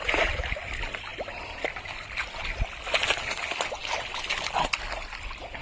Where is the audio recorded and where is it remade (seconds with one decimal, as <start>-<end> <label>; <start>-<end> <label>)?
0.0-5.6 recorded